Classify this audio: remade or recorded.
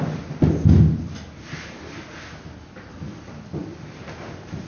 recorded